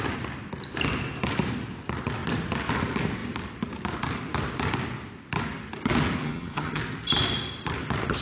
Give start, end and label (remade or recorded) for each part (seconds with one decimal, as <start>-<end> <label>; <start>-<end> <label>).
0.0-6.2 recorded; 6.2-6.8 remade; 6.8-8.2 recorded